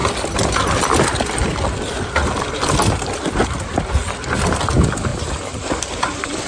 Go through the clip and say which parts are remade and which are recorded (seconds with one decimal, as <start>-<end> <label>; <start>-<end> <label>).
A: 0.0-6.5 recorded